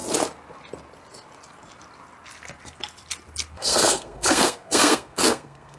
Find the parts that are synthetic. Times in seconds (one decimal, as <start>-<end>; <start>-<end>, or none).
3.5-5.8